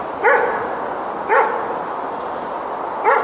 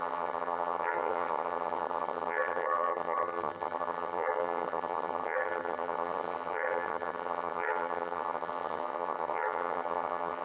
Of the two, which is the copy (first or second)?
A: second